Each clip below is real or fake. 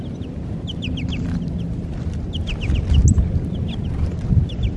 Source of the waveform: real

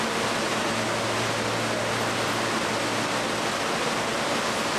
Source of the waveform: real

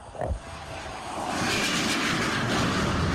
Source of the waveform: fake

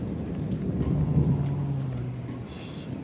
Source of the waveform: real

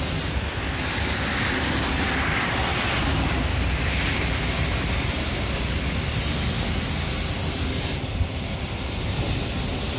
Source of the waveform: real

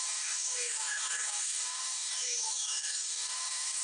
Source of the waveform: fake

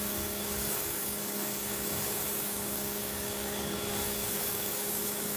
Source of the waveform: fake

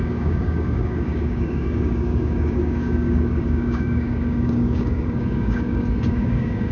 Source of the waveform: fake